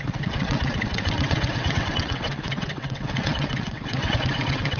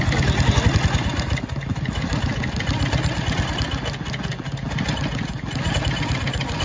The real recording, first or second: second